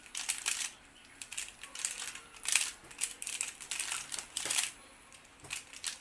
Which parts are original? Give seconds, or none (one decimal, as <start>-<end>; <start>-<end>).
1.3-2.2